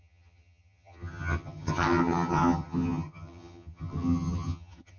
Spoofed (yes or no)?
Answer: yes